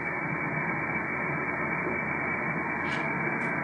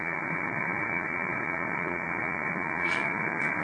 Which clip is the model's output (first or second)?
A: second